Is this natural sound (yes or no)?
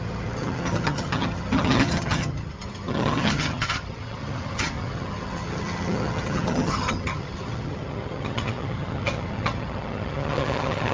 no